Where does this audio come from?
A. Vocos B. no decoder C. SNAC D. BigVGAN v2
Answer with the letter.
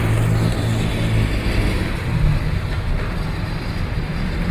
B